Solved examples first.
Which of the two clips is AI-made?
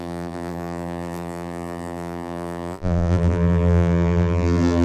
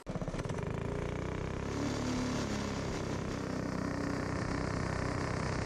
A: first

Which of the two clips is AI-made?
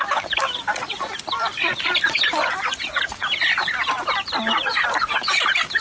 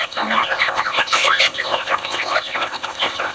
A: second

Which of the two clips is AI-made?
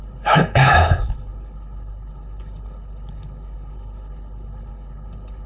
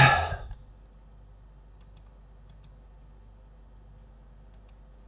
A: first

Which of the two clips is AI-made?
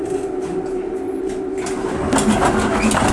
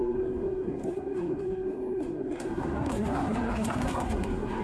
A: second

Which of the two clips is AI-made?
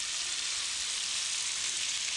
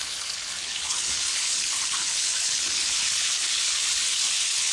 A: second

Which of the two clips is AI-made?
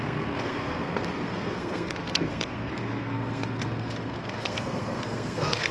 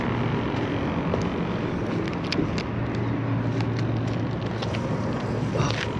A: first